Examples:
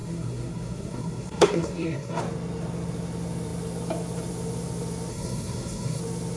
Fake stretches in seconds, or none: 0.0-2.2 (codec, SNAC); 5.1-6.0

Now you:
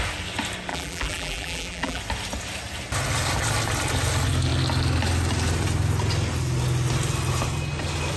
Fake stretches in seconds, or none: 0.7-2.0 (vocoder, BigVGAN v2)